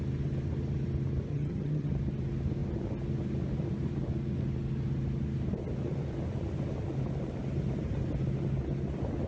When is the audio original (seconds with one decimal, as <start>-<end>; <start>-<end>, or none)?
0.0-1.3; 1.9-9.3

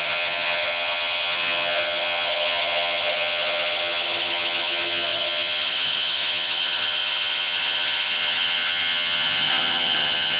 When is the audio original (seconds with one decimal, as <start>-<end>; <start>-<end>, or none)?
none

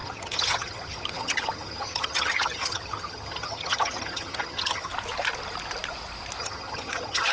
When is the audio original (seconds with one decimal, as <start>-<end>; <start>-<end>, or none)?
4.9-6.4

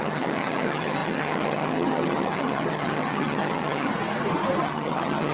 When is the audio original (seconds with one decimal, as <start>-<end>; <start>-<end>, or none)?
3.9-4.6

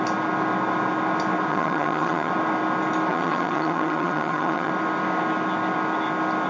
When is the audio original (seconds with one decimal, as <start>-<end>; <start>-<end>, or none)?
0.0-1.5; 2.3-3.1; 4.7-6.5

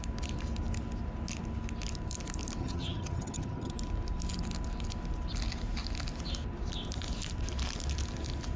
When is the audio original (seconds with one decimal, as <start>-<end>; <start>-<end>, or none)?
0.0-2.6; 3.7-8.6

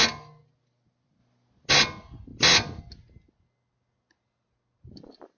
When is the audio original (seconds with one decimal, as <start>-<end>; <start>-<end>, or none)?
0.0-5.4